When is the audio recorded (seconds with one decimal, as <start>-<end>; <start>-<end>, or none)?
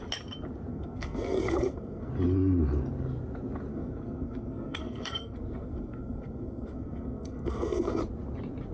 0.0-0.7; 2.1-3.7; 8.0-8.7